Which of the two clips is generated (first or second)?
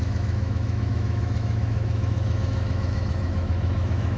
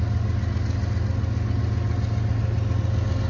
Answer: first